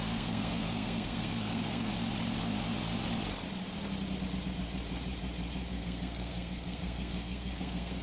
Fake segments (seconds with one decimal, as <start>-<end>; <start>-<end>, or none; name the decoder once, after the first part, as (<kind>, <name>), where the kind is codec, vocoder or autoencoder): 0.0-1.9 (codec, SNAC); 5.7-8.0